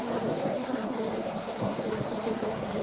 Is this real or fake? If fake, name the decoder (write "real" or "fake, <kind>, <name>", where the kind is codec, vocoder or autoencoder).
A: fake, codec, SNAC